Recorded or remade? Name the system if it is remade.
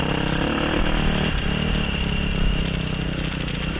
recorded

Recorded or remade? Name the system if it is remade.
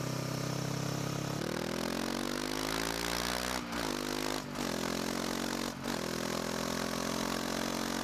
recorded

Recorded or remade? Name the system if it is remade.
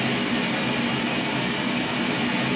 recorded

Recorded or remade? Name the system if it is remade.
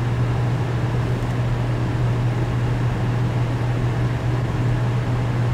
recorded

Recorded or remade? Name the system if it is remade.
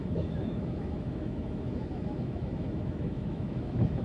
remade, autoencoder, DAC-VAE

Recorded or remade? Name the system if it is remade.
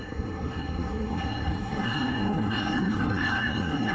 remade, codec, SNAC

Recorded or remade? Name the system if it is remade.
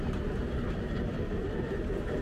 remade, vocoder, BigVGAN v2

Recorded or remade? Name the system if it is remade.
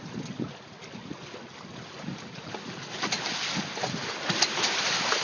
recorded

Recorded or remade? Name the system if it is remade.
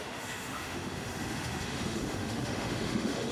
remade, autoencoder, DAC-VAE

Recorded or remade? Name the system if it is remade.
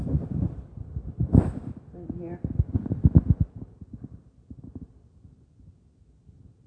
recorded